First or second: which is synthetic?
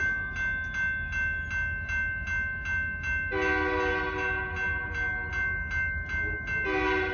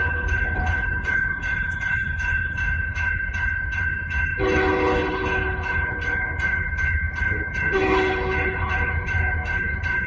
second